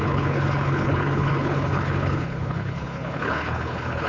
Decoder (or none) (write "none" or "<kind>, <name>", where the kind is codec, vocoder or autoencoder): codec, HILCodec